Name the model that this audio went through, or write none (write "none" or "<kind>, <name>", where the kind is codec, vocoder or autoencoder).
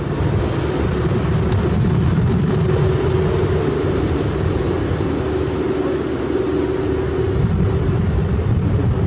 none